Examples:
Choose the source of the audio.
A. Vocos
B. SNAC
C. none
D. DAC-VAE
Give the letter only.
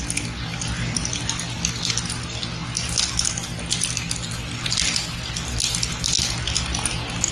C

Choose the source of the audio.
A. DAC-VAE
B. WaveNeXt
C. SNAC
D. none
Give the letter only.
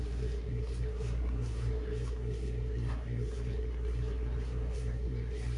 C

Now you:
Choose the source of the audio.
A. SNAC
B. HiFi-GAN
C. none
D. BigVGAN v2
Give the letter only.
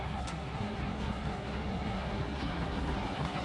A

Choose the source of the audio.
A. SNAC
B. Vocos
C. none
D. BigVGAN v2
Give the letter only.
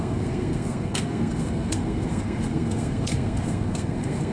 A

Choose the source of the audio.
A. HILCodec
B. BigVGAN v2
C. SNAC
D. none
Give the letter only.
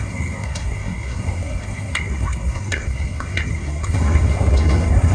C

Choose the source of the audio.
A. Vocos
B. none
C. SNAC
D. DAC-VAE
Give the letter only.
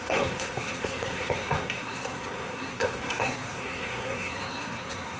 C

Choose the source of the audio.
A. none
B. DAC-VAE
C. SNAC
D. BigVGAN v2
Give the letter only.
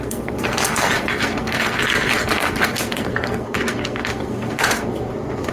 C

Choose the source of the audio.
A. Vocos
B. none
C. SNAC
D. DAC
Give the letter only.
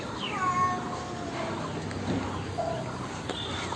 B